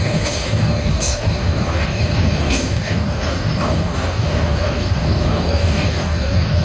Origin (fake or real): fake